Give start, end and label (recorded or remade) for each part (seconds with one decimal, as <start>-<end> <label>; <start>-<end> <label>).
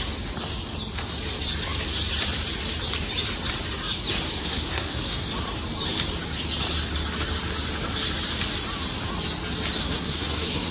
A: 0.0-4.4 recorded; 4.4-5.3 remade; 5.3-9.8 recorded; 9.8-10.7 remade